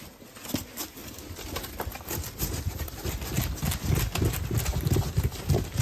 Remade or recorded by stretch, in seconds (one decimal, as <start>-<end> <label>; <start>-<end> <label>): 0.0-4.7 recorded; 4.7-5.8 remade